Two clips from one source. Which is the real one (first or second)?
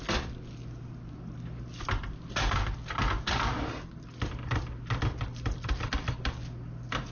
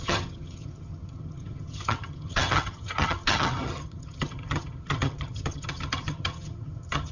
first